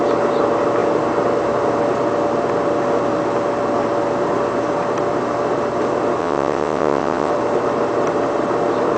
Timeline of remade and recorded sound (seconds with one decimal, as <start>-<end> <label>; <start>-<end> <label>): 0.0-6.2 recorded; 6.2-7.3 remade; 7.3-9.0 recorded